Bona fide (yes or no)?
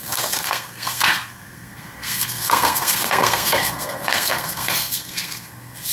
no